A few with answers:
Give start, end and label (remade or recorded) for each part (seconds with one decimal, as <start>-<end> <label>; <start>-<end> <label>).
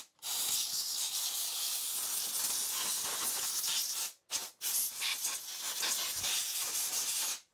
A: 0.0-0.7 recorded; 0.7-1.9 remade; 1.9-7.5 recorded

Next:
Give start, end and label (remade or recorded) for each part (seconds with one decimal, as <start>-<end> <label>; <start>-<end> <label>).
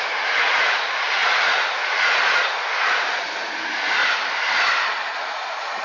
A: 0.0-4.0 remade; 4.0-5.2 recorded; 5.2-5.8 remade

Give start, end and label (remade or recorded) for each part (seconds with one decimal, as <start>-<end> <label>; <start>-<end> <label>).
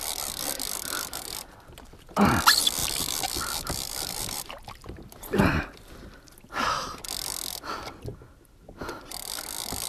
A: 0.0-2.8 recorded; 2.8-4.5 remade; 4.5-9.9 recorded